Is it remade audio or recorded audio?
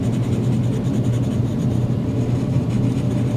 recorded